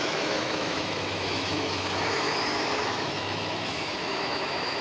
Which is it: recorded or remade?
remade